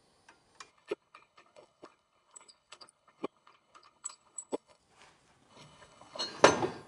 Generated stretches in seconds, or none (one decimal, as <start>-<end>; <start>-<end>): 0.7-4.8; 5.5-6.2